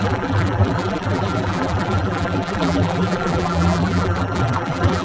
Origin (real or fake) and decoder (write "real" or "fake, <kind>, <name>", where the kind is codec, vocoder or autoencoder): fake, vocoder, BigVGAN v2